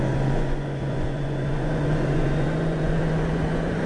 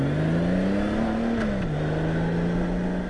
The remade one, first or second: first